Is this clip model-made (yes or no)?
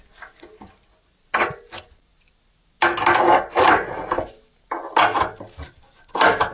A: no